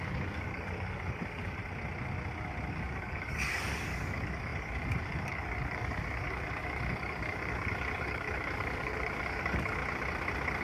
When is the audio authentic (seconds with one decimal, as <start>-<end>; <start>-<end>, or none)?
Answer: 1.6-2.7; 9.8-10.6